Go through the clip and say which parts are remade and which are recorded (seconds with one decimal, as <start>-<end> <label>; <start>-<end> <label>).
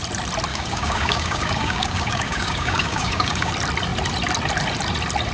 0.0-0.5 recorded; 0.5-3.5 remade; 3.5-5.3 recorded